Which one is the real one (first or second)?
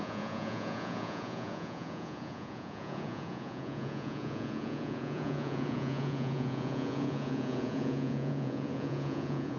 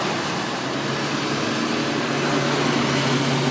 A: second